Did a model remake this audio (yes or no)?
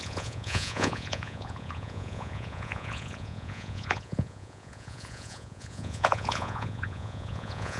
yes